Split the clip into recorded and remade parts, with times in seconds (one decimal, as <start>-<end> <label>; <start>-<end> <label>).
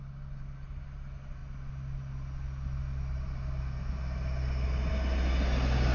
0.0-5.9 recorded